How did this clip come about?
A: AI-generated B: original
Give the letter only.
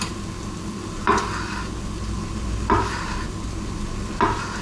B